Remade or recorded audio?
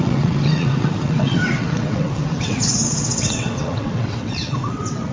remade